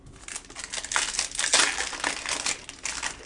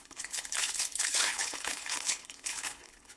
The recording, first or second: first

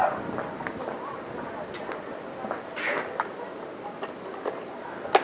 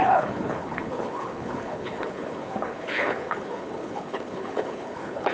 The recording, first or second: first